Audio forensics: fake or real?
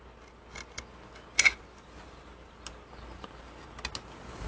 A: real